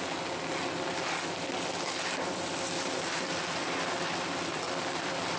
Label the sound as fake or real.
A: real